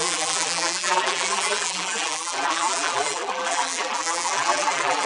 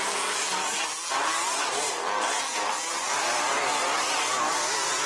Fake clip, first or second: first